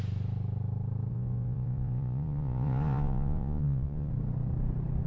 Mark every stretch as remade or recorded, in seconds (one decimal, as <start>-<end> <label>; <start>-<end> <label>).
0.0-1.1 recorded; 1.1-4.1 remade; 4.1-5.1 recorded

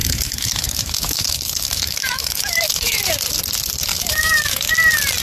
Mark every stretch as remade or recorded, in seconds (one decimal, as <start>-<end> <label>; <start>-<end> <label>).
0.0-3.1 remade; 3.1-3.9 recorded; 3.9-4.7 remade; 4.7-5.2 recorded

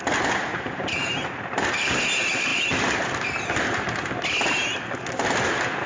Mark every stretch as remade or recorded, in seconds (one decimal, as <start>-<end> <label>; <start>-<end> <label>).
0.0-0.5 recorded; 0.5-1.8 remade; 1.8-2.5 recorded; 2.5-3.6 remade; 3.6-5.9 recorded

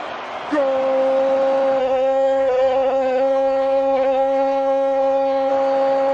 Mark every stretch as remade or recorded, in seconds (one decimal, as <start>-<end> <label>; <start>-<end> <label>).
0.0-1.8 recorded; 1.8-5.5 remade; 5.5-6.1 recorded

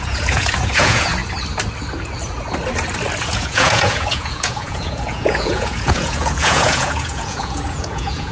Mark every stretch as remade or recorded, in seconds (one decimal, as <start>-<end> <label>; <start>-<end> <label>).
0.0-1.2 remade; 1.2-3.2 recorded; 3.2-8.3 remade

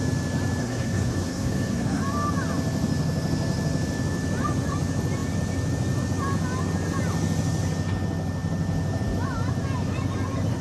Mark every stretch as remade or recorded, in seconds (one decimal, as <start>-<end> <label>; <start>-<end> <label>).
0.0-0.6 recorded; 0.6-2.0 remade; 2.0-10.6 recorded